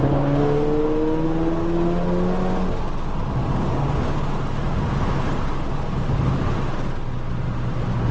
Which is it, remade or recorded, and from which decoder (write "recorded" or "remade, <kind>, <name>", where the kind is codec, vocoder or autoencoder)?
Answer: recorded